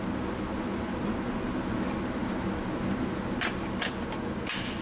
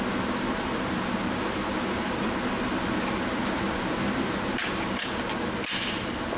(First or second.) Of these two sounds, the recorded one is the first